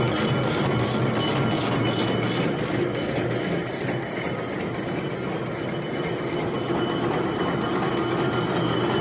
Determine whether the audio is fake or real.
real